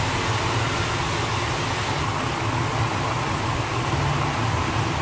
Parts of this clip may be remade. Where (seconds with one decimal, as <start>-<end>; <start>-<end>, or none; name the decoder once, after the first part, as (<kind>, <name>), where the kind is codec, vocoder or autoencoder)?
none